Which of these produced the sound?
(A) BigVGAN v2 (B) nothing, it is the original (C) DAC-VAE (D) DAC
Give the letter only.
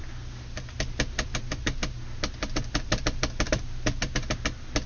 B